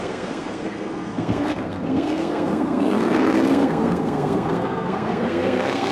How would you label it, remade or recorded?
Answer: remade